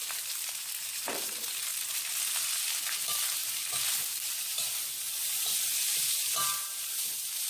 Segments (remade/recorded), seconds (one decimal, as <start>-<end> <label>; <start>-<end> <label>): 0.0-1.7 remade; 1.7-2.6 recorded; 2.6-7.5 remade